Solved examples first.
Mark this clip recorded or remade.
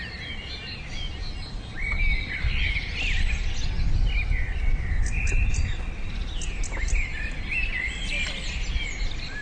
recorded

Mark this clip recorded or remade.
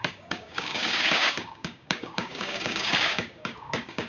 remade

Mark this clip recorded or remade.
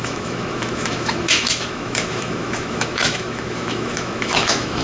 remade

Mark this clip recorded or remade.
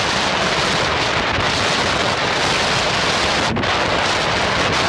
recorded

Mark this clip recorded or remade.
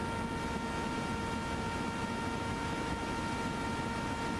recorded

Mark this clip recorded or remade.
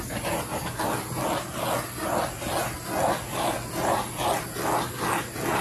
recorded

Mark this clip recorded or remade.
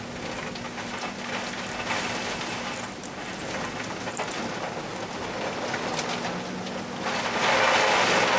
recorded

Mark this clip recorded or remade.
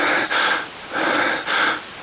recorded